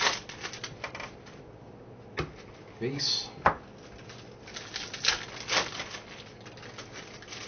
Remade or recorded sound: recorded